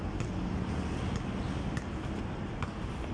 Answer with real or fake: real